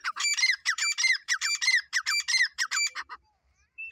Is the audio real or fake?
fake